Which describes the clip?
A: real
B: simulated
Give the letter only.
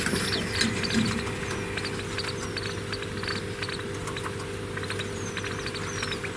A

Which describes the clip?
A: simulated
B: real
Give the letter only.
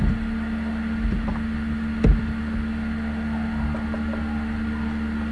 B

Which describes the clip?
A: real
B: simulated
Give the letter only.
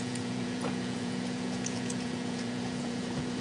B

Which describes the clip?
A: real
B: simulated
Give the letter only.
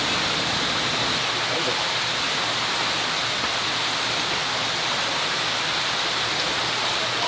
A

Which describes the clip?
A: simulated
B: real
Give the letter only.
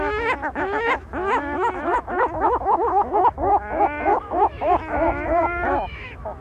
A